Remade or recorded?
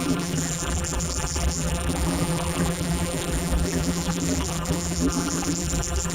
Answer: remade